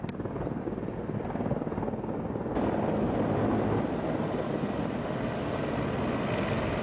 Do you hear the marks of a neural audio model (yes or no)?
no